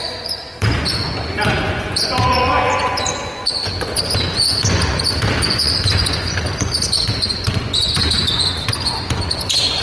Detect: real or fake fake